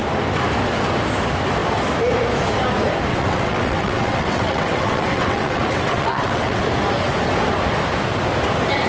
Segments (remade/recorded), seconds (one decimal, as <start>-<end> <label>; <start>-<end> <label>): 0.0-3.1 recorded; 3.1-6.6 remade; 6.6-8.9 recorded